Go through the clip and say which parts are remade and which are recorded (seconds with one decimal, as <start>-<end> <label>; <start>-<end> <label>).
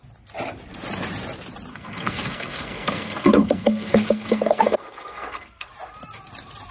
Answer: 0.0-1.7 recorded; 1.7-5.7 remade; 5.7-6.7 recorded